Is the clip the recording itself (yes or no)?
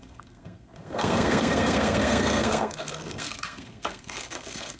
no